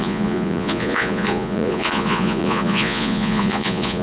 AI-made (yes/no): yes